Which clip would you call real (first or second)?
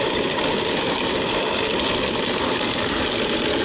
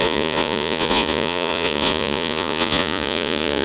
first